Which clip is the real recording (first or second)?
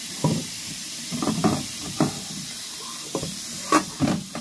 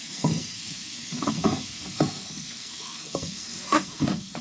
first